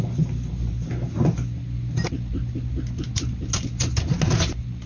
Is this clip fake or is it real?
real